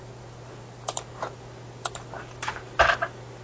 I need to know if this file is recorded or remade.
recorded